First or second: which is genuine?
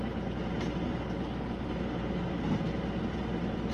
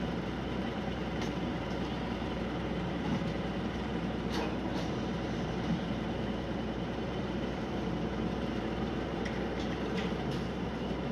first